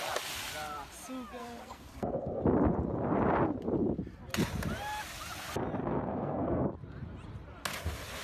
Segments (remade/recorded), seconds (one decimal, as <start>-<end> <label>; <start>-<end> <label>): 0.0-1.4 recorded; 1.4-2.4 remade; 2.4-5.8 recorded; 5.8-6.7 remade; 6.7-8.2 recorded